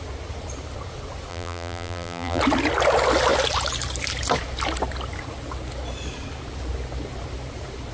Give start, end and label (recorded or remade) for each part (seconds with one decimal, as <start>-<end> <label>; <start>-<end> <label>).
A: 0.0-1.3 recorded; 1.3-2.4 remade; 2.4-7.9 recorded